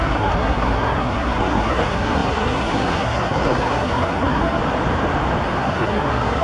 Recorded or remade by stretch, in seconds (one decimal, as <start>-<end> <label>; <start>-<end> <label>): 0.0-4.6 remade; 4.6-5.6 recorded; 5.6-6.4 remade